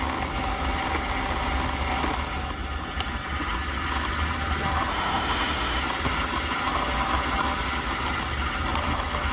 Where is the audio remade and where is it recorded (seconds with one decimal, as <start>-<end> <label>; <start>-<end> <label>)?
0.0-4.9 recorded; 4.9-5.8 remade; 5.8-9.3 recorded